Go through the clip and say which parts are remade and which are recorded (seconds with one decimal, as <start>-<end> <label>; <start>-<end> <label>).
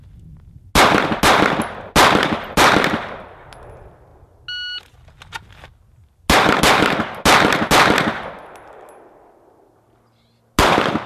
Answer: 0.0-11.1 recorded